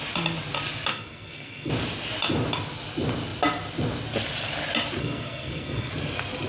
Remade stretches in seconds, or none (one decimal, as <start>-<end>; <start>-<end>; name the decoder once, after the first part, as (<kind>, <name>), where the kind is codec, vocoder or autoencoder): 0.9-1.7 (codec, SNAC); 5.0-5.9